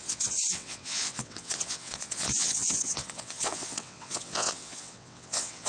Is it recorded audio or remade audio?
remade